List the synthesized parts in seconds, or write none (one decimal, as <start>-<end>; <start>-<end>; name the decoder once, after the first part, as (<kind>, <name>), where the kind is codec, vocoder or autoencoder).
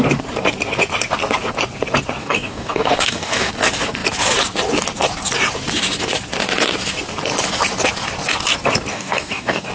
2.2-3.5 (codec, DAC); 8.9-9.7